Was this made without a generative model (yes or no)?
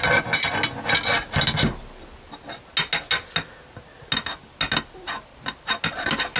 yes